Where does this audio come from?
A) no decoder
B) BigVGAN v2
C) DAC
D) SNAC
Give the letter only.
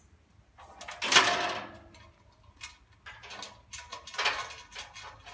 A